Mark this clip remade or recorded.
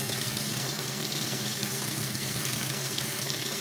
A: remade